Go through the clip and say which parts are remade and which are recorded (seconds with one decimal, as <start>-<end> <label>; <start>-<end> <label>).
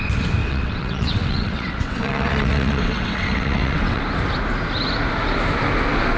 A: 0.0-0.4 recorded; 0.4-4.0 remade; 4.0-6.2 recorded